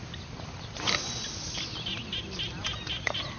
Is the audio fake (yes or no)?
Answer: no